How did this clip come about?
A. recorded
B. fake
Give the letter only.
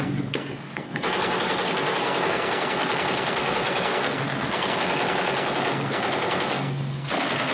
B